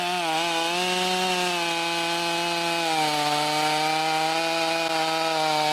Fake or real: real